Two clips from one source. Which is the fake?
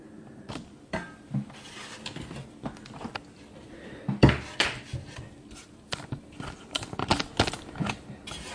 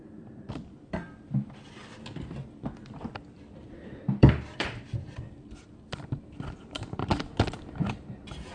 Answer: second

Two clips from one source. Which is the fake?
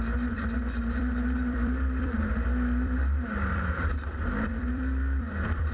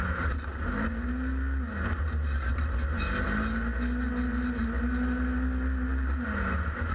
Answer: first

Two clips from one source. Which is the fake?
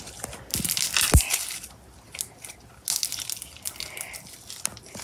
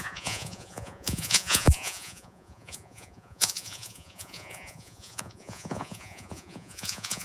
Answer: second